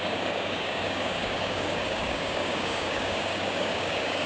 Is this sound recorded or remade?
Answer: remade